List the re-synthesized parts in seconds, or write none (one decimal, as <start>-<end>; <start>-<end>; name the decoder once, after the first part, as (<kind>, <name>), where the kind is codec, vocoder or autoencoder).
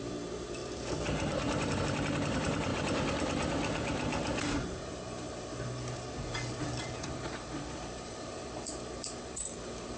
0.0-10.0 (vocoder, BigVGAN v2)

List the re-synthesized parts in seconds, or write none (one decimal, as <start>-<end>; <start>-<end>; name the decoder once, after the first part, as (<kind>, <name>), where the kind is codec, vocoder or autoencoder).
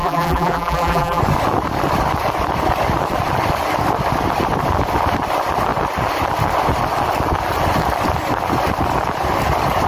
0.0-1.2 (vocoder, BigVGAN v2)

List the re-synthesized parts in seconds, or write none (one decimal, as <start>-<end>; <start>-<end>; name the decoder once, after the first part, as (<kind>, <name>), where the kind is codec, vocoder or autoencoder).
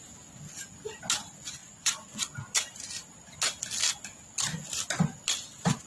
1.6-2.2 (vocoder, Vocos)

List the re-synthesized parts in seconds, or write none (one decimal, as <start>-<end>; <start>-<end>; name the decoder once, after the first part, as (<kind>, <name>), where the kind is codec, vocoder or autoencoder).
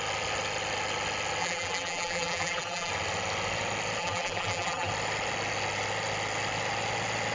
1.4-2.9 (vocoder, BigVGAN v2); 4.0-4.9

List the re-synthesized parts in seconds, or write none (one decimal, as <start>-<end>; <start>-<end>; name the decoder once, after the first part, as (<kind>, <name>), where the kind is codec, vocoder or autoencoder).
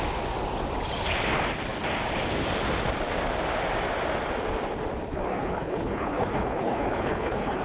5.1-7.6 (codec, HILCodec)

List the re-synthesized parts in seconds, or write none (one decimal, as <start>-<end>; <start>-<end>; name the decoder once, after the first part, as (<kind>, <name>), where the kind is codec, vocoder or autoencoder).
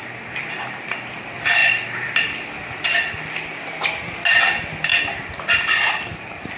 0.0-4.9 (vocoder, BigVGAN v2); 5.4-6.6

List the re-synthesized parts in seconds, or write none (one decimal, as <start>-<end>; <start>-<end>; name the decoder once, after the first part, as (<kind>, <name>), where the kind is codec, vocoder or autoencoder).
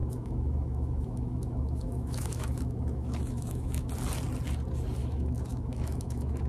0.0-3.9 (autoencoder, DAC-VAE); 5.0-6.5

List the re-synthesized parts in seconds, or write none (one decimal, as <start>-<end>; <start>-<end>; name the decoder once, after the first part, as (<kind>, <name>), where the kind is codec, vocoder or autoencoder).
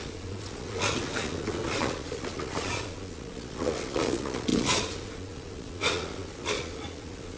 0.0-7.4 (vocoder, Vocos)